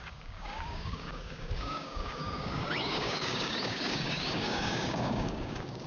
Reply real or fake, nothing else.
fake